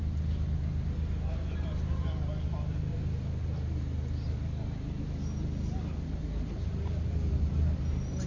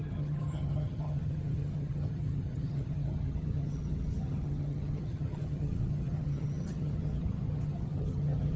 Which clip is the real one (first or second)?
first